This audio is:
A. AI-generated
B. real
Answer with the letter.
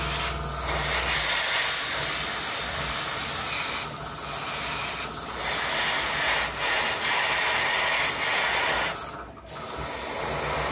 B